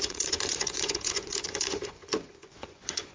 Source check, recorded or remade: remade